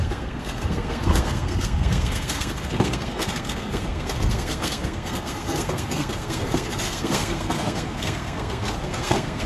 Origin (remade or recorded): remade